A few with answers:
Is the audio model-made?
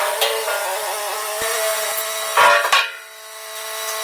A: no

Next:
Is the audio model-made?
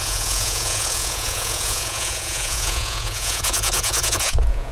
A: yes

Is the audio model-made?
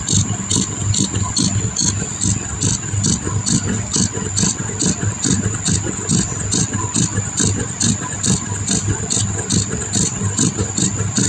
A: no